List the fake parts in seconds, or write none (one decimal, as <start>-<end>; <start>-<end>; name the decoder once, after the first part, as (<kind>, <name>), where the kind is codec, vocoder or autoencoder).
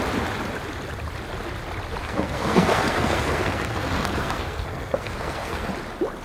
2.0-5.7 (codec, SNAC)